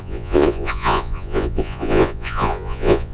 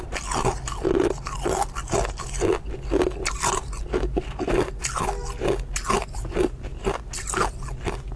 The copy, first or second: first